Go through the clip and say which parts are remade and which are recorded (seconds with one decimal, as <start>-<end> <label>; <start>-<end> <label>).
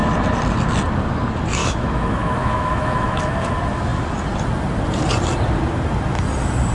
0.0-1.6 recorded; 1.6-3.5 remade; 3.5-6.7 recorded